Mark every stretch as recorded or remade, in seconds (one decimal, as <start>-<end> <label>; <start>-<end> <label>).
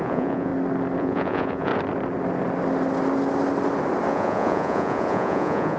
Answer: 0.0-0.5 remade; 0.5-1.0 recorded; 1.0-1.7 remade; 1.7-4.1 recorded; 4.1-5.8 remade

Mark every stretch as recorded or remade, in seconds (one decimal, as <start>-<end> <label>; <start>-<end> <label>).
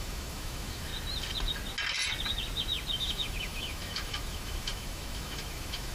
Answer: 0.0-0.9 remade; 0.9-3.0 recorded; 3.0-5.9 remade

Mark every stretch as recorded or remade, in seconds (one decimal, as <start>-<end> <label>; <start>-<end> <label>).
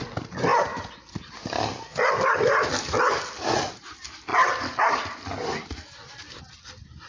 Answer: 0.0-7.1 recorded